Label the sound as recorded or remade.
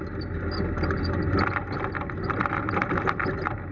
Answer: recorded